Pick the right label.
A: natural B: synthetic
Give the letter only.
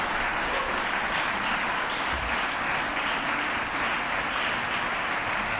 A